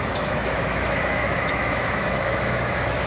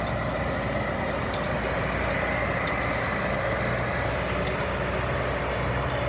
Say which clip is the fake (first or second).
first